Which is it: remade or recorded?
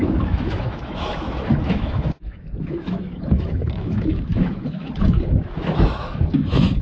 remade